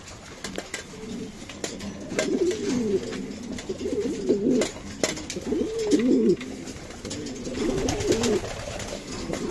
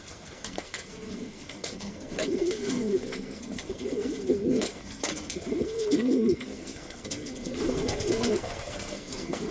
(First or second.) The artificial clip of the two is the second